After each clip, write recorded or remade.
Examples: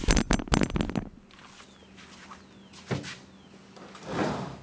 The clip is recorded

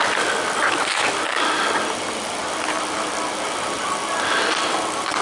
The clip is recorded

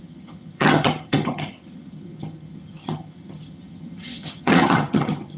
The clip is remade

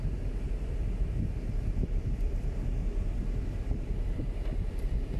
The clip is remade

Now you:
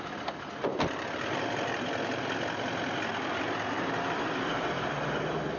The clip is recorded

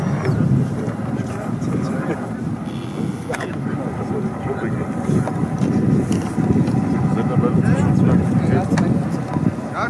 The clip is recorded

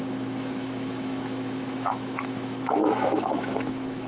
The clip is remade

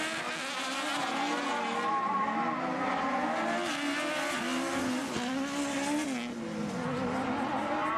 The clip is recorded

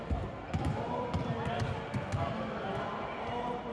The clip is recorded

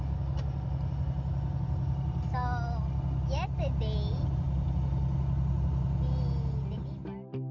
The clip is recorded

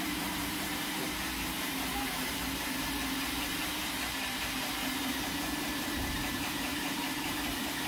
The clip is remade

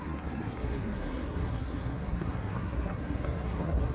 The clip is remade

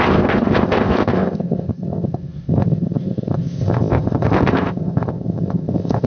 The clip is remade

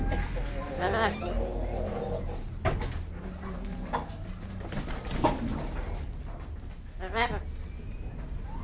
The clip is recorded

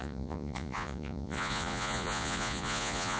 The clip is remade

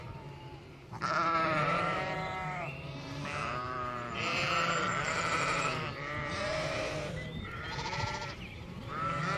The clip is remade